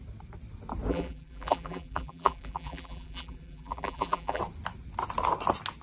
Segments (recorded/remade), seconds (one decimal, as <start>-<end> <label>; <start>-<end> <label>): 0.0-0.9 recorded; 0.9-4.4 remade; 4.4-5.8 recorded